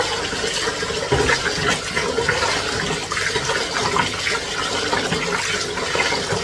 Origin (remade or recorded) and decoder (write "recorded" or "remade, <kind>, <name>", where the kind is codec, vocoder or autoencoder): recorded